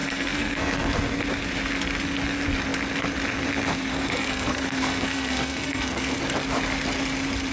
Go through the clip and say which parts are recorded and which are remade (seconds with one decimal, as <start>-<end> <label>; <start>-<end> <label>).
0.0-1.2 remade; 1.2-3.9 recorded; 3.9-6.2 remade; 6.2-7.5 recorded